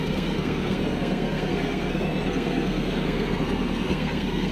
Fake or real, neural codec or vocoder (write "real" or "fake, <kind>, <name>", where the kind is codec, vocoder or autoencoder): fake, codec, SNAC